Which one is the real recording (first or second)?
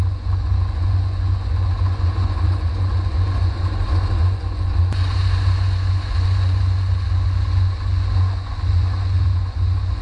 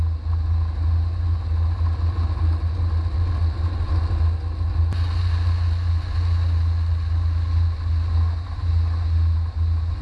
second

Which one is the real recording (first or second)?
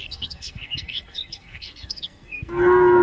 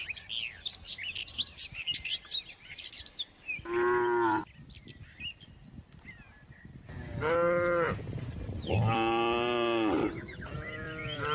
second